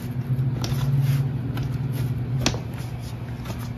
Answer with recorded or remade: recorded